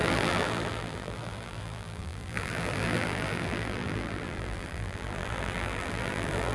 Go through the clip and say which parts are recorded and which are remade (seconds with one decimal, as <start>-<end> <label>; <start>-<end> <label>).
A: 0.0-6.5 remade